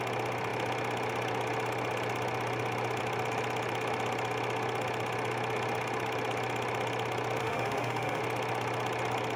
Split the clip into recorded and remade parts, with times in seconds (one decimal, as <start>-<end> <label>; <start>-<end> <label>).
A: 0.0-7.4 recorded; 7.4-8.2 remade; 8.2-9.4 recorded